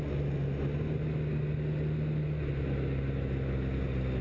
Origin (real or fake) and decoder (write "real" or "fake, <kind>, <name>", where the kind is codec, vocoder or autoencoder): real